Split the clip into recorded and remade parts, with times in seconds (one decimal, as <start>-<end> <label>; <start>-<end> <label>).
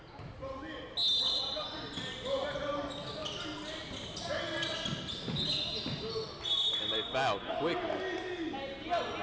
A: 0.0-9.2 recorded